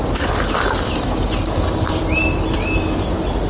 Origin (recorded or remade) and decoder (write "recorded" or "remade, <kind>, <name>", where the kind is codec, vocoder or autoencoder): recorded